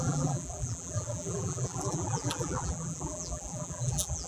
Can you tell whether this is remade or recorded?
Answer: remade